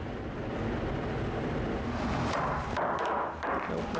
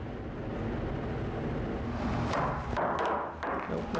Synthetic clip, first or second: first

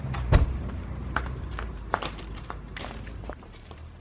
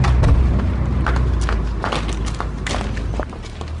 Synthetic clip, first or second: first